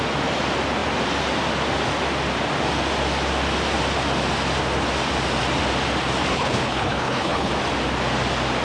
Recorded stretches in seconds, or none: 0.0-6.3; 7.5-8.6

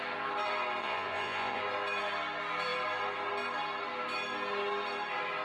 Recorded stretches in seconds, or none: 0.0-0.8; 1.6-5.4

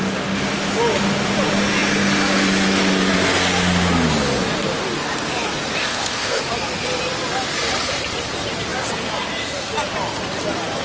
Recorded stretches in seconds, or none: 0.0-5.8; 6.4-10.8

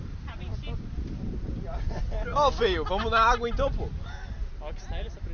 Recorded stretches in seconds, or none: 0.0-5.3

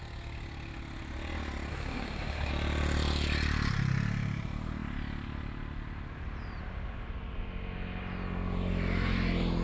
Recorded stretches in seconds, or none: 0.0-1.7; 2.5-9.6